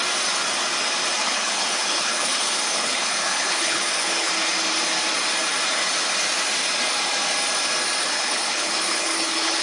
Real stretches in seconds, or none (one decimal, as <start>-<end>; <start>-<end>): 0.0-1.2; 4.3-8.0